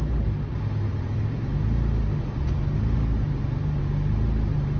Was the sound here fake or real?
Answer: real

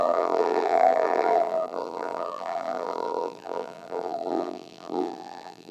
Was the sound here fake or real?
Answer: fake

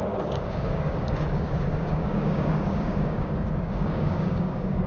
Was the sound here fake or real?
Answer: fake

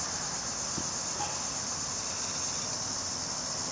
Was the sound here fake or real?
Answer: real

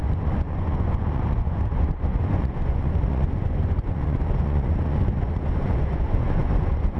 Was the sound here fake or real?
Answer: fake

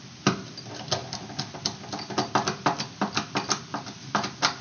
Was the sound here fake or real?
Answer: real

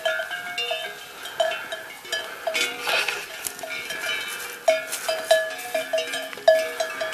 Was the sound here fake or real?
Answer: real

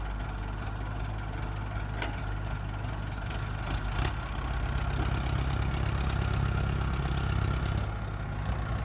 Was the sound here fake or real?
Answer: real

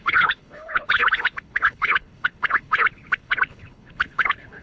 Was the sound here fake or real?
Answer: fake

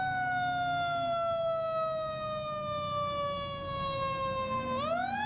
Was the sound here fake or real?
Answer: real